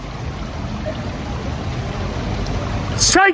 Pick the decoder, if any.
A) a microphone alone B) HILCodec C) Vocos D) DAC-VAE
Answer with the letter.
A